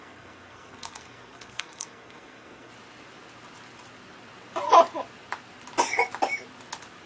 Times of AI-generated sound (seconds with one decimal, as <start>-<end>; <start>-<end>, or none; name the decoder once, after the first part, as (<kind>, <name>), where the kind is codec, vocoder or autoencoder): 0.0-2.7 (codec, SNAC)